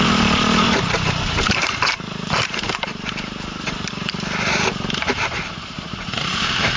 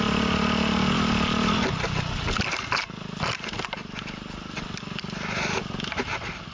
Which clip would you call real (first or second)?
second